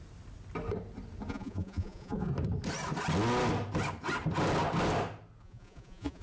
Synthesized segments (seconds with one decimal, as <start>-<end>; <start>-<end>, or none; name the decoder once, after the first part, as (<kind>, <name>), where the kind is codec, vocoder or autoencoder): 1.3-2.3 (vocoder, Vocos); 5.4-6.2